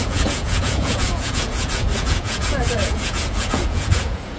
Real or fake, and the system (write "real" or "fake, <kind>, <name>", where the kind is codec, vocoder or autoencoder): fake, vocoder, Vocos